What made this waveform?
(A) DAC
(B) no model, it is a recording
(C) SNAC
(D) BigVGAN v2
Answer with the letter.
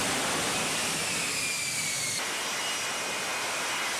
B